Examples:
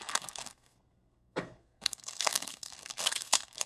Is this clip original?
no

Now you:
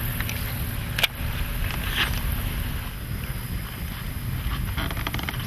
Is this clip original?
yes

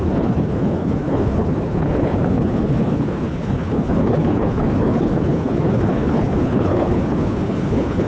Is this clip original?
no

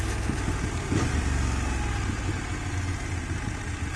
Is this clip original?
yes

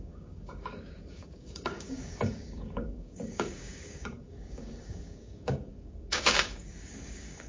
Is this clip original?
no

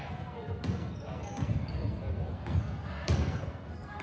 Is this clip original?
no